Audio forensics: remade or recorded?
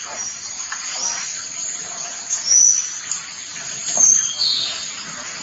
recorded